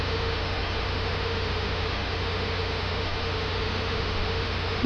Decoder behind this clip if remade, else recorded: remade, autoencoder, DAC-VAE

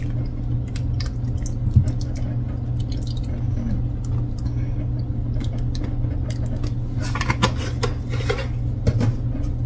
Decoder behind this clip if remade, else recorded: recorded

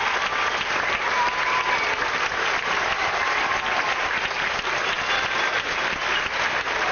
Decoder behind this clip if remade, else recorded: recorded